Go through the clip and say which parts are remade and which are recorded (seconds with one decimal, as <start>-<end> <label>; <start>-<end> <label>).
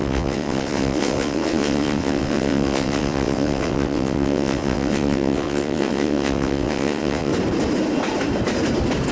0.0-7.3 remade; 7.3-9.1 recorded